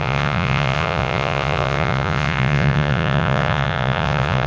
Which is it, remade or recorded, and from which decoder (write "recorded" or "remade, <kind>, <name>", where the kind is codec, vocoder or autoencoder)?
remade, vocoder, Vocos